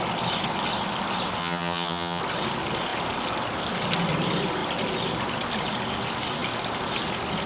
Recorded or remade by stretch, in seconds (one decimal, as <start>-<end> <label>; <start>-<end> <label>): 0.0-1.4 recorded; 1.4-2.2 remade; 2.2-7.5 recorded